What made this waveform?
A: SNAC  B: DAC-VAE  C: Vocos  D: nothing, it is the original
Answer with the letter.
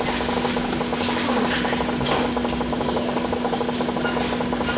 D